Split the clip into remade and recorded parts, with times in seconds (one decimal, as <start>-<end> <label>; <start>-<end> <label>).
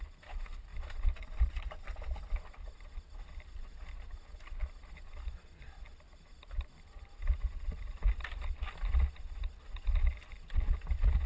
0.0-11.3 recorded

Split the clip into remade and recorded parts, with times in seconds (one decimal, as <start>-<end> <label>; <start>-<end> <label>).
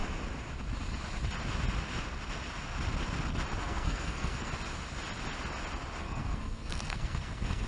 0.0-3.6 recorded; 3.6-4.5 remade; 4.5-6.0 recorded; 6.0-7.7 remade